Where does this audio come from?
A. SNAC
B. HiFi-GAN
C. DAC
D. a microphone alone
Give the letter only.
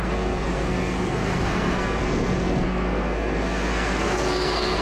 A